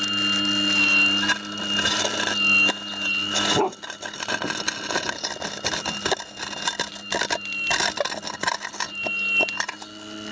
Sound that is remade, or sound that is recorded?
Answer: recorded